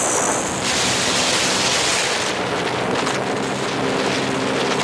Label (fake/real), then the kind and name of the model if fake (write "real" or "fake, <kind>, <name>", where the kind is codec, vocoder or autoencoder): real